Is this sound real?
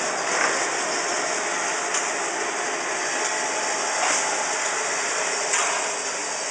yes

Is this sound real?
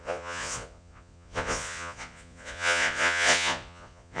no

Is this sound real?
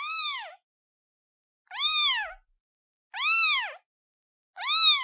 yes